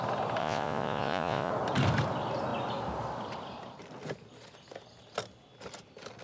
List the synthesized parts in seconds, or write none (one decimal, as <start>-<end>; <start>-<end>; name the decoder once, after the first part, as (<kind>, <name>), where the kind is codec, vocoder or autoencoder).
0.4-1.5 (vocoder, Vocos)